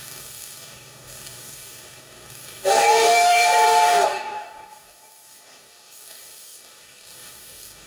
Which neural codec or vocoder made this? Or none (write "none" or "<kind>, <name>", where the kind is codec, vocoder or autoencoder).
codec, DAC